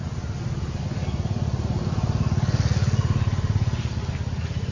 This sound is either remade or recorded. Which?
recorded